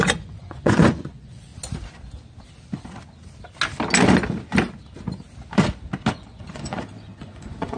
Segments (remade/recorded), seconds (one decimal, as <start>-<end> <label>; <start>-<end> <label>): 0.0-1.5 remade; 1.5-6.1 recorded; 6.1-7.8 remade